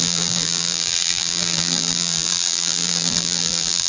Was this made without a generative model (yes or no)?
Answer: no